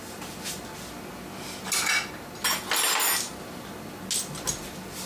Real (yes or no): yes